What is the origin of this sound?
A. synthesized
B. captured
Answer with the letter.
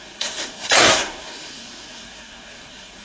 A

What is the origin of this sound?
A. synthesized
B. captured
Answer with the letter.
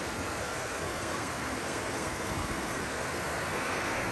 A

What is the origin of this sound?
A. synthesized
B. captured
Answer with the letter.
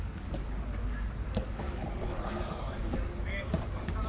A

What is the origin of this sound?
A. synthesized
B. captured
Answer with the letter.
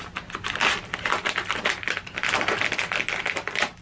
B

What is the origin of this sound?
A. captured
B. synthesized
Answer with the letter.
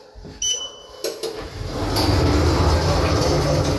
A